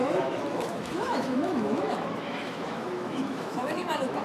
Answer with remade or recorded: remade